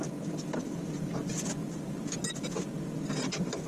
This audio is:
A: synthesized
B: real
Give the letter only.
B